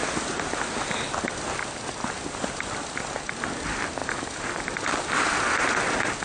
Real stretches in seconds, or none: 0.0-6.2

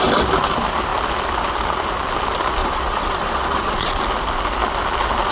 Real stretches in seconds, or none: 0.0-2.6; 4.0-5.3